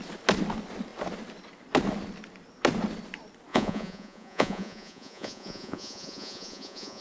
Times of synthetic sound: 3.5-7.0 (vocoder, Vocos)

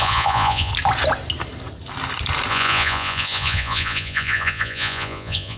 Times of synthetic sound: 0.0-0.7 (vocoder, Vocos); 2.5-5.6